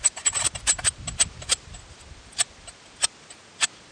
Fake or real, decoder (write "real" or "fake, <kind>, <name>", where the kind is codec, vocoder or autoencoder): real